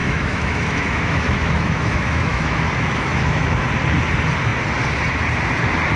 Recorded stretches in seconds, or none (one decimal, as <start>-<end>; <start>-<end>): 3.6-6.0